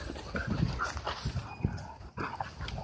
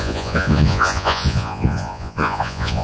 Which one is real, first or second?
first